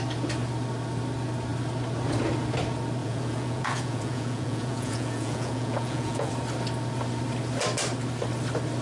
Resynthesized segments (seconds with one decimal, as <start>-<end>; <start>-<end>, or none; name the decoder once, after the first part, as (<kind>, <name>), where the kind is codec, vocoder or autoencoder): 3.0-6.3 (vocoder, Vocos)